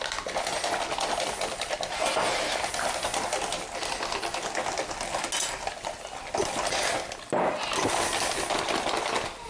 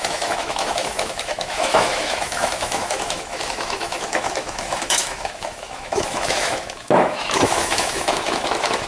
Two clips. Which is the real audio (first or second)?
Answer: first